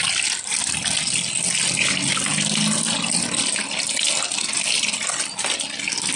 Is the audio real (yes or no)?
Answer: yes